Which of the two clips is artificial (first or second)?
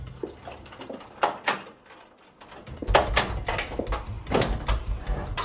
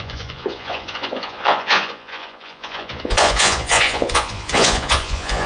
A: second